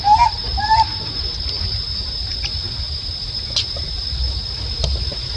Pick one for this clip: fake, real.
real